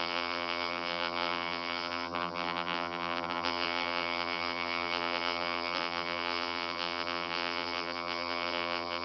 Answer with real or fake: fake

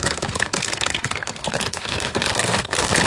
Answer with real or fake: fake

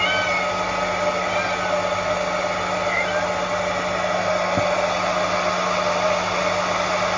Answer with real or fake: real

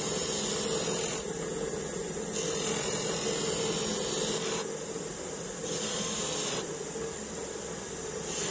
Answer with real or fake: real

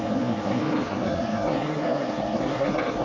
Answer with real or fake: fake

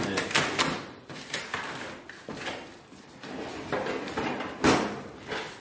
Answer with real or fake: real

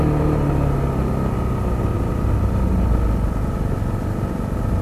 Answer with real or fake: real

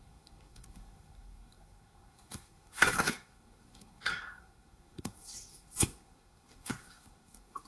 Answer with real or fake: fake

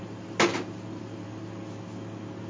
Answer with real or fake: real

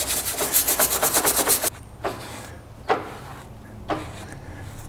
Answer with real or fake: real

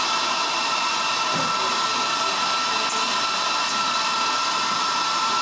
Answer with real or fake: real